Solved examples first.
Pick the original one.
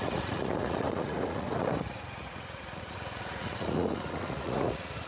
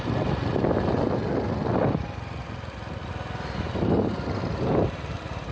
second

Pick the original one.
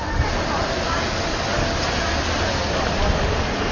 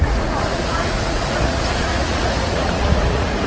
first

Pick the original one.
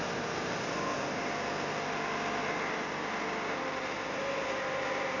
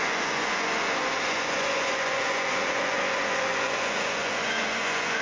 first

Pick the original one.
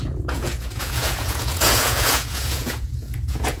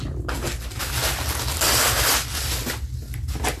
second